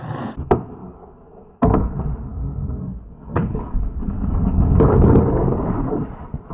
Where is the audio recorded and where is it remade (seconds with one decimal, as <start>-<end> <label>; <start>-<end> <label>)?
0.0-0.8 recorded; 0.8-1.9 remade; 1.9-2.3 recorded; 2.3-5.2 remade; 5.2-6.5 recorded